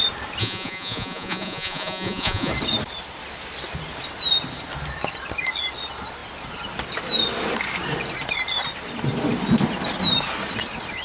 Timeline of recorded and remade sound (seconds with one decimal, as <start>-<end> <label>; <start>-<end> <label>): 0.0-0.4 recorded; 0.4-2.5 remade; 2.5-11.0 recorded

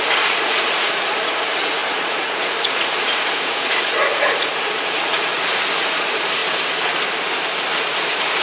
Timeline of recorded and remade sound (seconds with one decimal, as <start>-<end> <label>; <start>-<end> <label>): 0.0-6.4 remade; 6.4-7.9 recorded; 7.9-8.4 remade

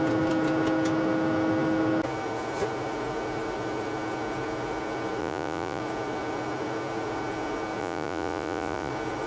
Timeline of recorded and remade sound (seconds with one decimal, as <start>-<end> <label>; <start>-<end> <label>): 0.0-5.2 recorded; 5.2-5.8 remade; 5.8-7.8 recorded; 7.8-8.9 remade; 8.9-9.3 recorded

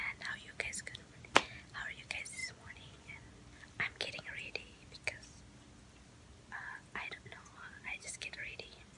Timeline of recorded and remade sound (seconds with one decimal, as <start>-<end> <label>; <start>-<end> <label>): 0.0-2.4 recorded; 2.4-3.3 remade; 3.3-9.0 recorded

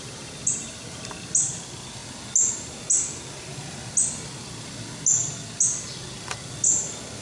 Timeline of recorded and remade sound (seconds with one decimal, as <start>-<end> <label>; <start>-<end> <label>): 0.0-7.2 recorded

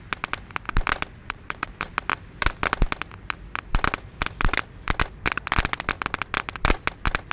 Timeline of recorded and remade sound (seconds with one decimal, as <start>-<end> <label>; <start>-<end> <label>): 0.0-1.2 recorded; 1.2-1.9 remade; 1.9-7.3 recorded

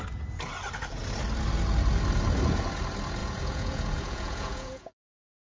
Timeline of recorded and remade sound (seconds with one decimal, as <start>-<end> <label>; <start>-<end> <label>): 0.0-3.2 recorded; 3.2-5.5 remade

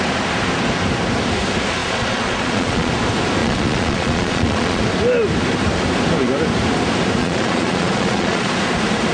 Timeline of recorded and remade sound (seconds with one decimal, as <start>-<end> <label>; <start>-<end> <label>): 0.0-1.8 recorded; 1.8-2.9 remade; 2.9-3.4 recorded; 3.4-4.8 remade; 4.8-7.2 recorded; 7.2-8.5 remade; 8.5-9.1 recorded